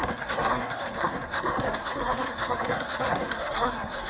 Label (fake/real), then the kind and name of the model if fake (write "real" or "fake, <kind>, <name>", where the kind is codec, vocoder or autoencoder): fake, codec, SNAC